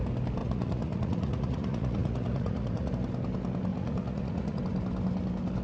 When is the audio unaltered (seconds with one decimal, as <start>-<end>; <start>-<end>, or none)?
0.0-0.4; 2.9-3.7; 4.6-5.6